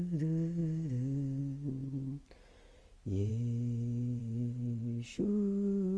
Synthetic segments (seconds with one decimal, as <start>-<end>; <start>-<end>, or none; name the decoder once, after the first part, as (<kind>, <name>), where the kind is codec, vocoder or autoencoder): 4.2-5.2 (vocoder, WaveNeXt)